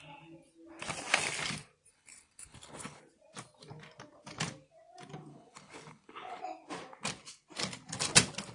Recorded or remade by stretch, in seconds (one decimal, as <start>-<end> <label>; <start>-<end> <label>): 0.0-1.9 recorded; 1.9-3.0 remade; 3.0-5.3 recorded; 5.3-6.4 remade; 6.4-8.5 recorded